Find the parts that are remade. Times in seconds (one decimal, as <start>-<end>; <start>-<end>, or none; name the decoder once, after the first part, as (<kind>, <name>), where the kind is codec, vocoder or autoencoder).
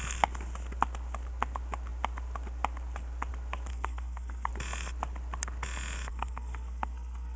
3.7-4.5 (codec, SNAC); 6.1-7.4